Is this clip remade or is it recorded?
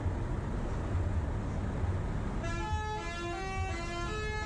recorded